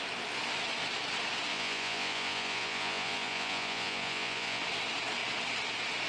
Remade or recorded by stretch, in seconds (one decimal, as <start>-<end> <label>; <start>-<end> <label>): 0.0-1.5 recorded; 1.5-4.6 remade; 4.6-6.1 recorded